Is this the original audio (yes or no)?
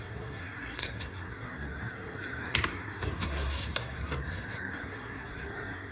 no